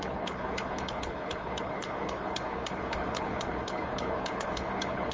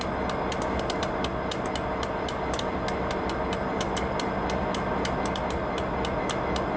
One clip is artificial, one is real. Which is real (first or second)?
second